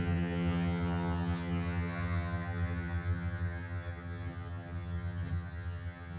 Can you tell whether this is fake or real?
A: fake